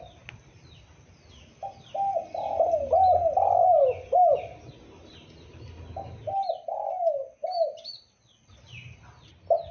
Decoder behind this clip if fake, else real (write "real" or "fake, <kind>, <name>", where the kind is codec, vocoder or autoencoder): real